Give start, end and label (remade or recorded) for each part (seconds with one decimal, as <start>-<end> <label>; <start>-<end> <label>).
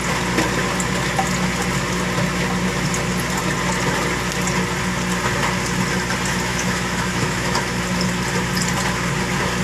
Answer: 0.0-6.5 recorded; 6.5-7.8 remade; 7.8-9.6 recorded